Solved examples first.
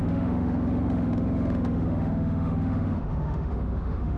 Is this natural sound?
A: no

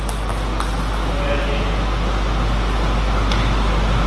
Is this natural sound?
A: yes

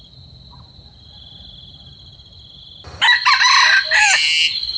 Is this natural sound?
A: yes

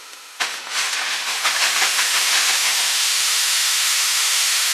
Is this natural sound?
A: no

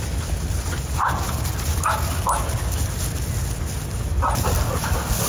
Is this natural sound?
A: yes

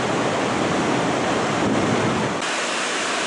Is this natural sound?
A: yes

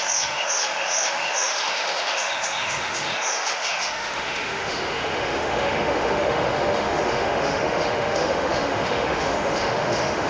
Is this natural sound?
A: no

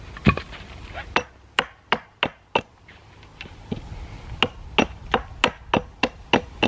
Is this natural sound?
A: yes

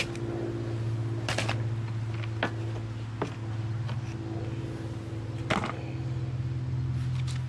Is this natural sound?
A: yes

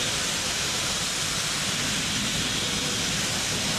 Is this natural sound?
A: yes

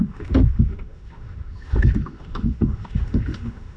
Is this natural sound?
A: no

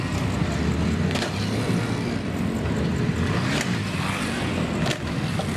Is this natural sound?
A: yes